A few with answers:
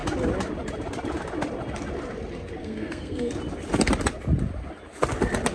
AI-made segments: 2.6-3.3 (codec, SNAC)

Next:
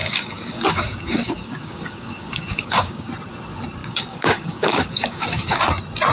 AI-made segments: 0.0-3.1 (codec, DAC); 3.8-5.6

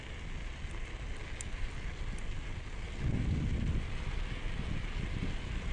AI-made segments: none

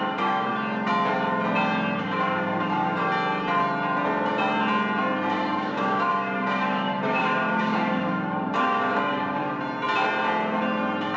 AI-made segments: 0.0-0.5 (codec, DAC); 2.0-3.0; 5.3-9.4

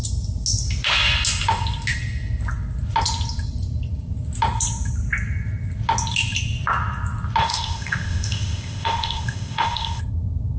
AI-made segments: 7.4-10.0 (codec, ZipCodec)

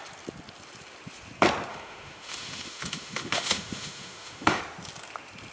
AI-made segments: 1.7-4.6 (autoencoder, DAC-VAE)

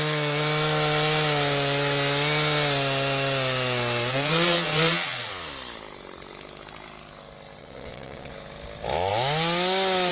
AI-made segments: 4.1-5.3 (vocoder, WaveNeXt); 7.6-8.3